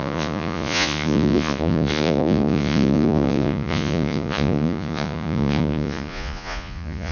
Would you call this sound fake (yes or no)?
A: yes